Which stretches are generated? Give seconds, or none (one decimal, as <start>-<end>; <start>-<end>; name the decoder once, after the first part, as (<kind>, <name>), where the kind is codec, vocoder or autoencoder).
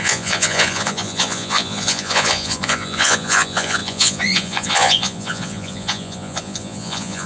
0.0-7.3 (vocoder, Vocos)